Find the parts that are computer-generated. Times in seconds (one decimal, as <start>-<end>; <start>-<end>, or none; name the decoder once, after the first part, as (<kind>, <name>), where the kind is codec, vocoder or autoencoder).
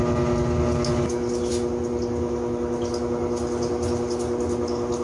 none